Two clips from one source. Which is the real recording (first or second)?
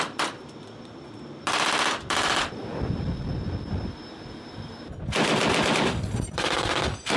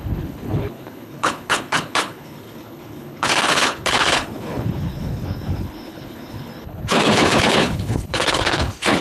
first